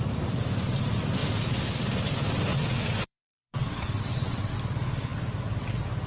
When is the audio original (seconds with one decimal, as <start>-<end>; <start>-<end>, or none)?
0.0-2.5; 4.5-6.1